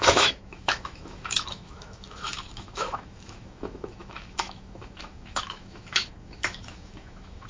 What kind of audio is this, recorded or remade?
remade